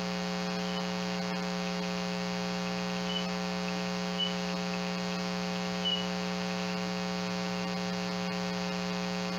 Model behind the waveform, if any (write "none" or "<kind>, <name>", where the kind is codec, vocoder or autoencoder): none